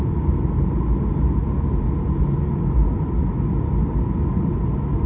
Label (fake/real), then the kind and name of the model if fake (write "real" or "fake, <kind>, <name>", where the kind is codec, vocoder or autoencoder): real